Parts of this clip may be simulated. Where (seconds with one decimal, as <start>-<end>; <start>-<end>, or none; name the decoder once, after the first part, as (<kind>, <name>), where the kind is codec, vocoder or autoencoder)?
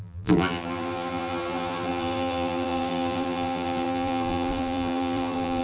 0.0-5.6 (vocoder, BigVGAN v2)